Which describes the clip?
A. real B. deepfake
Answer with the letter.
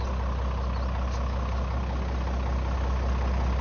A